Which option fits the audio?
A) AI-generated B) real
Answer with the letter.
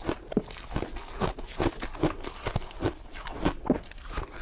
B